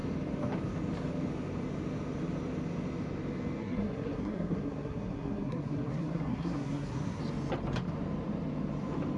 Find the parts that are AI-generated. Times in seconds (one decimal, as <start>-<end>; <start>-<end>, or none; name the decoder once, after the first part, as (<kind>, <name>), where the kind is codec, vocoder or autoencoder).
3.6-7.2 (codec, SNAC)

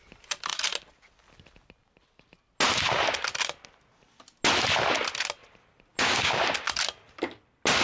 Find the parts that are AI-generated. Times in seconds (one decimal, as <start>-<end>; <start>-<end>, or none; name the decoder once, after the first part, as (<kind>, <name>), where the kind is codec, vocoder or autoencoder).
5.9-6.4 (codec, DAC)

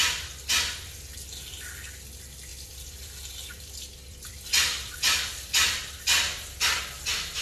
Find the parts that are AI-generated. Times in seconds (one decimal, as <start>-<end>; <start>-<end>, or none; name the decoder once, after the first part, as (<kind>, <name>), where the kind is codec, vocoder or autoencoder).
2.5-6.8 (vocoder, BigVGAN v2)